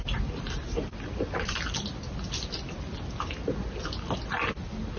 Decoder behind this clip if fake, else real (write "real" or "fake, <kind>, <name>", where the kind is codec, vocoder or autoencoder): real